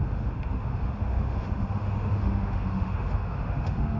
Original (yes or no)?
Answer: no